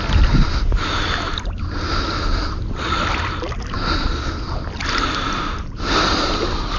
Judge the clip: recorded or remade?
recorded